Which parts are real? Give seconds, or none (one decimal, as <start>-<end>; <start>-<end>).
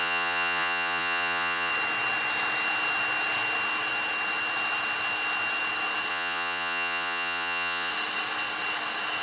1.7-6.1; 7.9-9.2